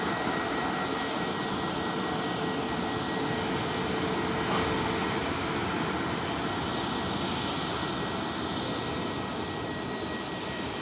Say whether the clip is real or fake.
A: real